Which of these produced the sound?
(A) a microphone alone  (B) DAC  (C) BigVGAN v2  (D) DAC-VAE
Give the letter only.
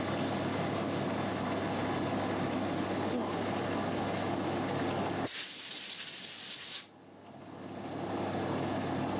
A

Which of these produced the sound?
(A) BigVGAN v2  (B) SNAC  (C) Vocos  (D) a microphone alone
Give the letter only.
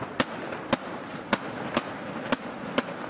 D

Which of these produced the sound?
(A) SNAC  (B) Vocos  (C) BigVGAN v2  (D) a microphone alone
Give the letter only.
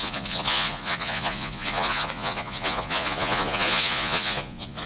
B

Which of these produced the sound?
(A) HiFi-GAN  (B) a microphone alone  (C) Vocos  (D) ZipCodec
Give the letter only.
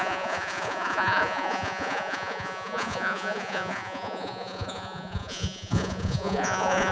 C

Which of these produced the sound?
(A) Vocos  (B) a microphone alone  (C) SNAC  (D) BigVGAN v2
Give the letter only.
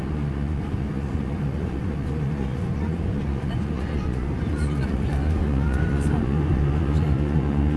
A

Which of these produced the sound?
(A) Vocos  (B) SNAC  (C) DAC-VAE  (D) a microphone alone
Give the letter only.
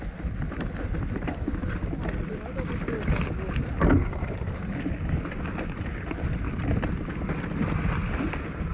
D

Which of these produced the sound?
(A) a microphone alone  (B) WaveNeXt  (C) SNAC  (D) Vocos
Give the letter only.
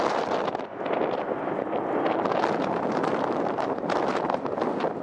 A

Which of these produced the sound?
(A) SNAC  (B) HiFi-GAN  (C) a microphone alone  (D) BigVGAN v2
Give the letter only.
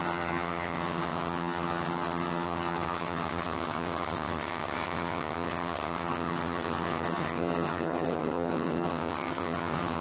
B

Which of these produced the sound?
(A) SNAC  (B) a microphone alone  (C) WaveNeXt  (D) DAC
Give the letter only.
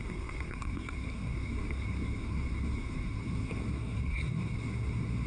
A